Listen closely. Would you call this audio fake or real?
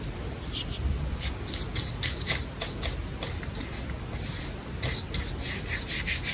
real